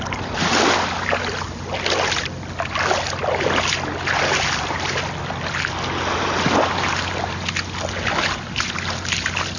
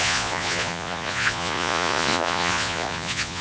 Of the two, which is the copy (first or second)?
second